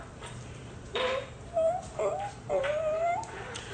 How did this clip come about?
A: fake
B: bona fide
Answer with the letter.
A